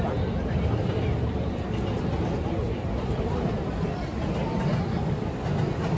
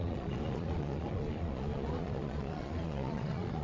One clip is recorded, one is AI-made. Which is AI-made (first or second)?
second